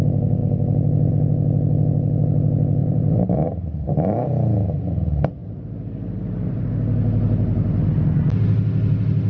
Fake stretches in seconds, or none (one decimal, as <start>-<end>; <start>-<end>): 2.8-4.8; 5.4-6.7